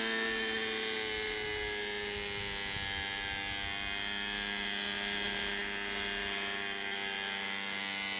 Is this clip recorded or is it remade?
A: recorded